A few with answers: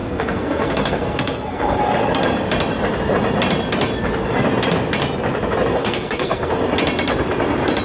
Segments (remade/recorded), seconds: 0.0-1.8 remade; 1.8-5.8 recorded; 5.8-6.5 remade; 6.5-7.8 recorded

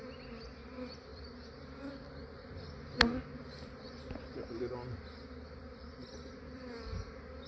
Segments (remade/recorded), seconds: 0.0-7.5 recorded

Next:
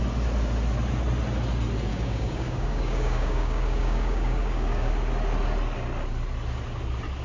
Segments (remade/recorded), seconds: 0.0-1.9 recorded; 1.9-4.9 remade; 4.9-7.2 recorded

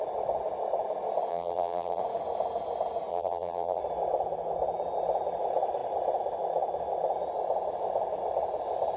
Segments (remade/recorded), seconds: 0.0-1.3 recorded; 1.3-2.0 remade; 2.0-3.1 recorded; 3.1-3.8 remade; 3.8-9.0 recorded

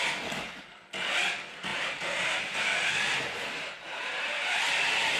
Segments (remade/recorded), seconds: 0.0-1.7 recorded; 1.7-4.6 remade; 4.6-5.2 recorded

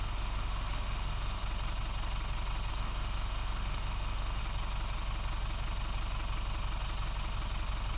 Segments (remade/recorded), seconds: 0.0-1.4 remade; 1.4-2.7 recorded; 2.7-4.4 remade; 4.4-8.0 recorded

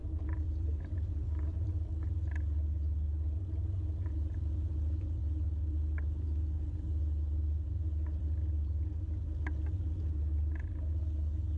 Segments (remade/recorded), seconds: 0.0-2.0 remade; 2.0-11.6 recorded